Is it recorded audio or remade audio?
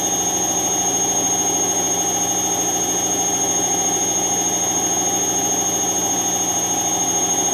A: recorded